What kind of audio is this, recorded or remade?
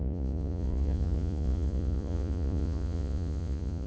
remade